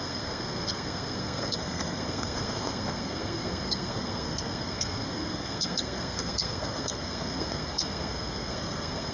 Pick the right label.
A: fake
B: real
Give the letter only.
A